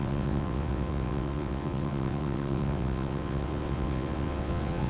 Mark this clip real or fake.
fake